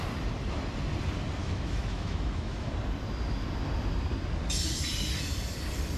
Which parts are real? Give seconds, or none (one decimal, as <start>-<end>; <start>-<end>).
0.0-1.4; 2.7-6.0